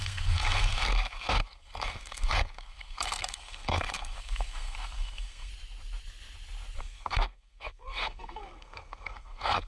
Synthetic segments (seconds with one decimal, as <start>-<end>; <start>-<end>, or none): 0.0-5.5; 6.8-9.7

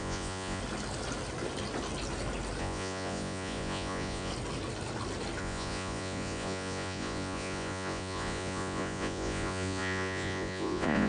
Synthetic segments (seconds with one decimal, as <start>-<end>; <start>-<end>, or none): 0.0-0.6; 2.6-4.3; 5.4-11.1